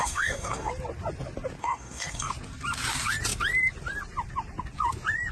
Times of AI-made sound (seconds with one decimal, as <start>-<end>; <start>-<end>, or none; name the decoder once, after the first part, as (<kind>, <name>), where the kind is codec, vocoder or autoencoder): 0.0-0.7 (codec, SNAC); 1.6-2.3